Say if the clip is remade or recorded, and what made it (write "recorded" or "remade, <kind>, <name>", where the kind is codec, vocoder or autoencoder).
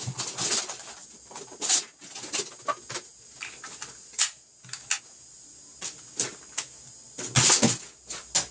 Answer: recorded